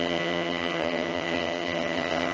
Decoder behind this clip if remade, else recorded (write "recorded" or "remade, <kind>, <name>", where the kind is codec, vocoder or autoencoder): remade, vocoder, HiFi-GAN